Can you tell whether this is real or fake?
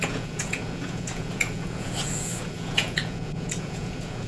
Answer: fake